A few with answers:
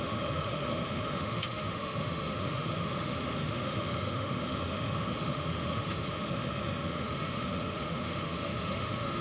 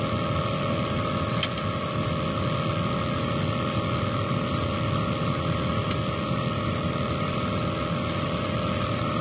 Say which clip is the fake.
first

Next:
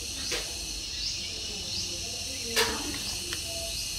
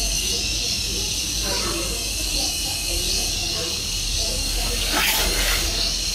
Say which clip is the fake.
second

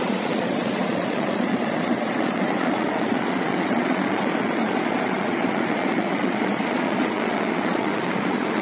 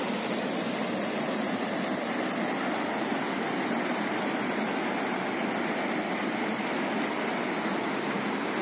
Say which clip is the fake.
first